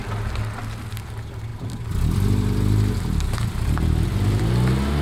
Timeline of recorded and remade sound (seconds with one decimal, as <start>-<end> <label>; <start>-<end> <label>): 0.0-1.5 recorded; 1.5-4.5 remade; 4.5-5.0 recorded